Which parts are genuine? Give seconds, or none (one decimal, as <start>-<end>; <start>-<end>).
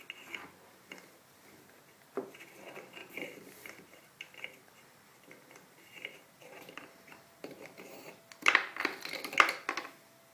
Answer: 0.0-3.0; 8.2-10.3